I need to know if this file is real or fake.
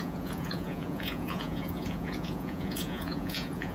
fake